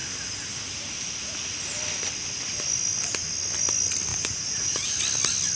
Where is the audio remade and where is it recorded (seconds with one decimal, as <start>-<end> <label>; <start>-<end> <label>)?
0.0-4.1 recorded; 4.1-5.0 remade; 5.0-5.6 recorded